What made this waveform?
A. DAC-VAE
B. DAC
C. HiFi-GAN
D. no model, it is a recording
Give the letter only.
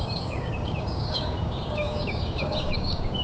B